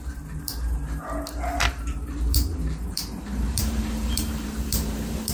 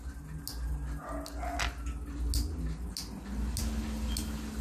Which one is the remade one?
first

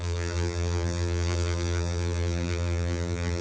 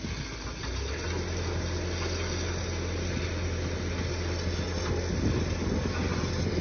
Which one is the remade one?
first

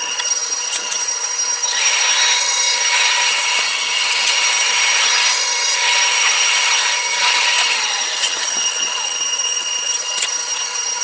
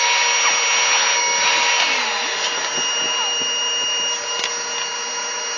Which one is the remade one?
first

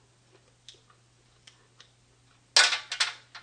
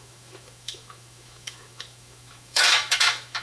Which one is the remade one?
second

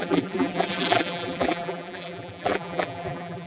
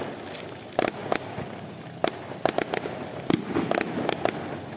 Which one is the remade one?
first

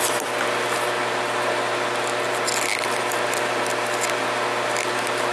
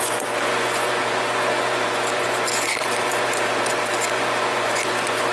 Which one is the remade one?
second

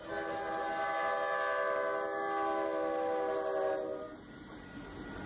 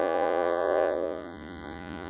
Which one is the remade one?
second